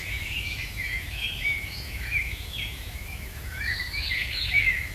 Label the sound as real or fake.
fake